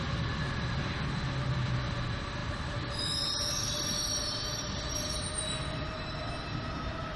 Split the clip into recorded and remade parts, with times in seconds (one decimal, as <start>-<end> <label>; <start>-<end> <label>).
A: 0.0-7.2 recorded